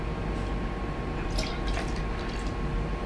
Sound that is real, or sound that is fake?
real